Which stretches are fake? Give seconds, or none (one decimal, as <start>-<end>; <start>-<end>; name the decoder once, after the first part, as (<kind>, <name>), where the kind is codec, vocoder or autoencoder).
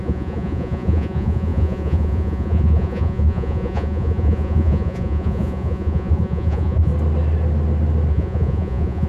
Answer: 0.0-6.9 (vocoder, Vocos); 8.1-9.1